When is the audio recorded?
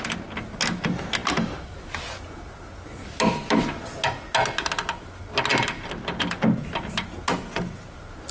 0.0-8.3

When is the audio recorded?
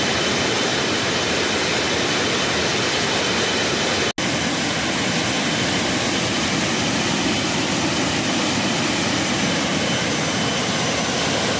0.0-11.6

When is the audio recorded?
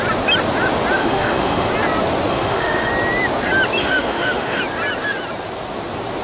0.0-1.0; 1.7-2.3; 2.9-3.8; 4.6-6.2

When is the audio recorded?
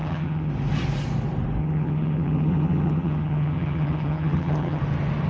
0.5-1.6; 4.8-5.3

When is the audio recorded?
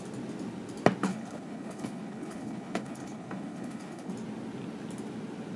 0.0-1.1; 4.1-5.6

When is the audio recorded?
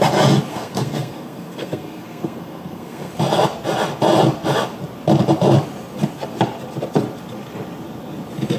0.0-0.5; 3.1-8.6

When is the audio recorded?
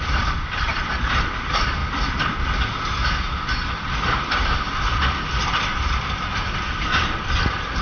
1.8-4.2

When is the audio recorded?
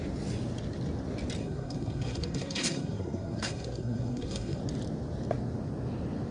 0.0-1.4; 4.6-6.3